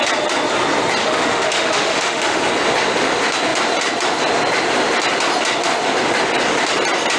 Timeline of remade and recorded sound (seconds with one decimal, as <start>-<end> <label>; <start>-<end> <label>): 0.0-1.0 recorded; 1.0-2.4 remade; 2.4-7.2 recorded